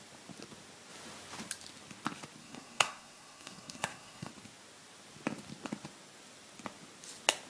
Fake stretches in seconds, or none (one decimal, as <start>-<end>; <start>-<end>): 2.4-4.3